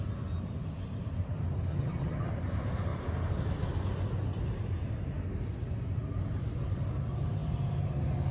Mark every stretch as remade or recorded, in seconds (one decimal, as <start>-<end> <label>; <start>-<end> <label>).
0.0-1.7 recorded; 1.7-2.3 remade; 2.3-8.3 recorded